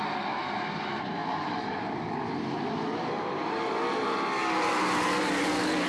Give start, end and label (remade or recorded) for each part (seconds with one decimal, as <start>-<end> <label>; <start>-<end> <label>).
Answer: 0.0-5.9 recorded

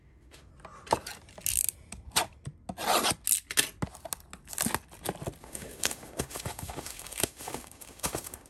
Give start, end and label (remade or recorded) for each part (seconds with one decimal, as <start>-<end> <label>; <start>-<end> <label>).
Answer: 0.0-0.5 remade; 0.5-5.4 recorded; 5.4-8.5 remade

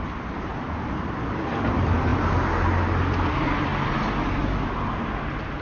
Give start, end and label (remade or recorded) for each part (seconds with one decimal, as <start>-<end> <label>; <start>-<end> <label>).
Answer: 0.0-0.5 remade; 0.5-1.7 recorded; 1.7-2.1 remade; 2.1-2.7 recorded; 2.7-3.7 remade; 3.7-5.6 recorded